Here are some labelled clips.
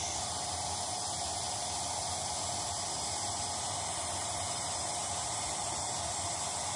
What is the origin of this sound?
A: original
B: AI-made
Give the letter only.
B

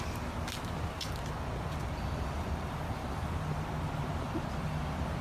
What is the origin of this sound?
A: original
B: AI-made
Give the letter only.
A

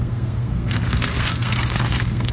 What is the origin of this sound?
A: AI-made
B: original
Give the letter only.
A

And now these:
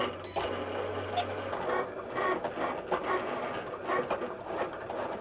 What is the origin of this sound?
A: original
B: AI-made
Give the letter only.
A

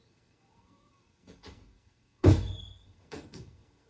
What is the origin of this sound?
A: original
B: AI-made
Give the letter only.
B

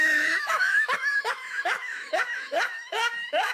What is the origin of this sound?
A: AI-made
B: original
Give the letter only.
A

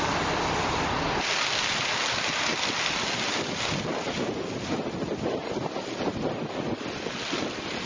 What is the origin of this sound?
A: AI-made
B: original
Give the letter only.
B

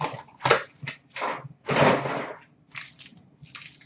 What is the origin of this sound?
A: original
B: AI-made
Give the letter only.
A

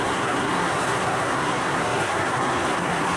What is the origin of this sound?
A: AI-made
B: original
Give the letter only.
A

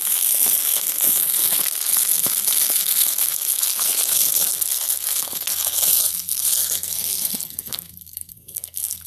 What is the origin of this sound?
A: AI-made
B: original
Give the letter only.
A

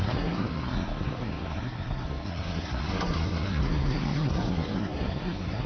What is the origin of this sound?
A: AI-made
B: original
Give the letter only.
A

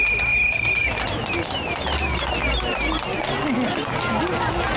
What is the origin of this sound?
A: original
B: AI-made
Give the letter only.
A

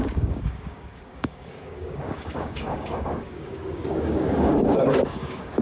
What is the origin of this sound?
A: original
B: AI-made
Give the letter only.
B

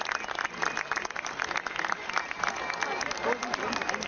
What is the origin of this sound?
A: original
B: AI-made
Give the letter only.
A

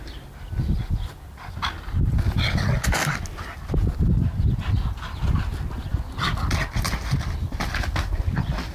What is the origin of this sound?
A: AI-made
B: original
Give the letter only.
B